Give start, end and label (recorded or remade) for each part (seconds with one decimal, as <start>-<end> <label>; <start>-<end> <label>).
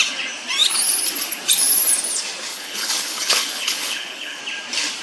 0.0-2.5 recorded; 2.5-4.4 remade; 4.4-5.0 recorded